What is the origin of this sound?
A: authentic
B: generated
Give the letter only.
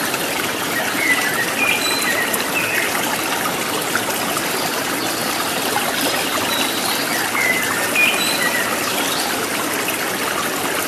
A